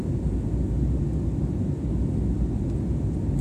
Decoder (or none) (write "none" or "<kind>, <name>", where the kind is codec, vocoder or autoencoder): none